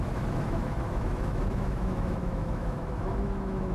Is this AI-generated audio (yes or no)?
yes